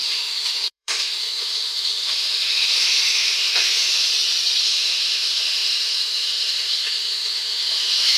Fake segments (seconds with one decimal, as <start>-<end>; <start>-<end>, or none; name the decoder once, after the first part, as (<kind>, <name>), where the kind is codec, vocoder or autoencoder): 0.0-4.1 (autoencoder, DAC-VAE); 4.6-8.2